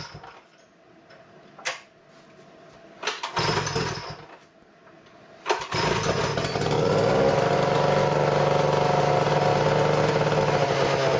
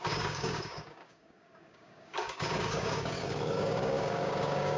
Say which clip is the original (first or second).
first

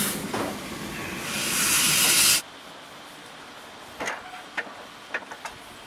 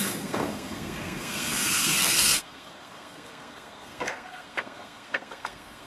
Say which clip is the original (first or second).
first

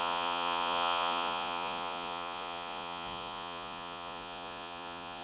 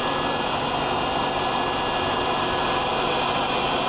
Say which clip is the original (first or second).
second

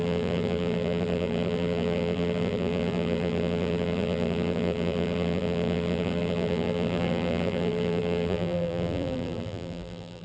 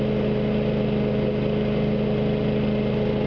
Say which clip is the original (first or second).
second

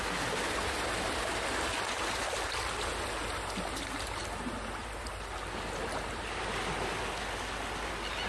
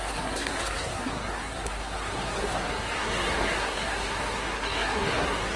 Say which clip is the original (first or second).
first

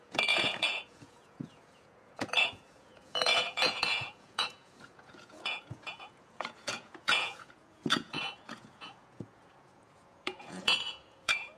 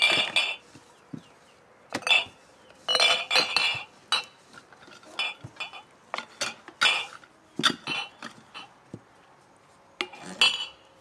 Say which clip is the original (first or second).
second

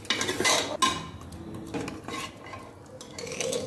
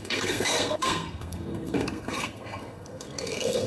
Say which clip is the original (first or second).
first